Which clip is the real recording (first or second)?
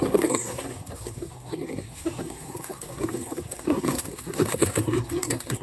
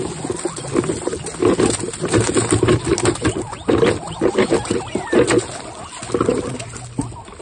second